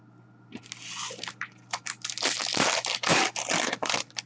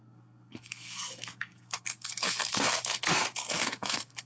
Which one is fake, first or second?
second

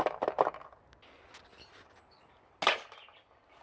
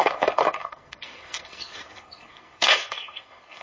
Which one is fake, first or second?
second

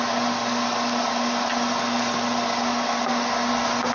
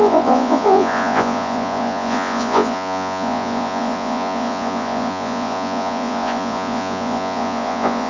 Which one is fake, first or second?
second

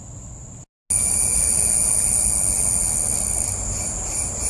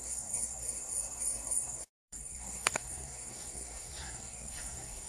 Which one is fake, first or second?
second